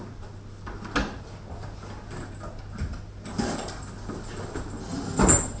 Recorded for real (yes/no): yes